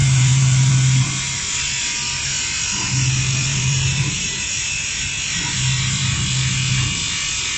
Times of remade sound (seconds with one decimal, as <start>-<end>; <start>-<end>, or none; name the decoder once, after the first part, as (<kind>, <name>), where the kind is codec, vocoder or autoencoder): 0.0-0.7 (vocoder, BigVGAN v2); 3.5-5.1